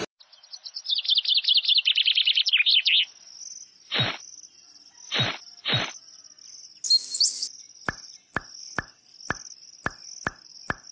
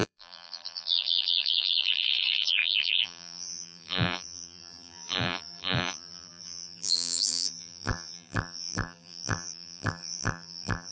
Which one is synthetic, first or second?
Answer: second